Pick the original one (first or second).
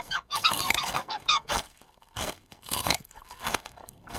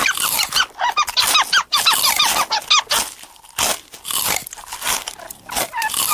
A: second